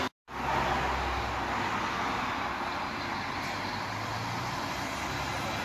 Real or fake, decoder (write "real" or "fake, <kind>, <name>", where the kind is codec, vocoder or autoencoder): real